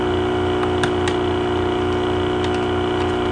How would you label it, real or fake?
real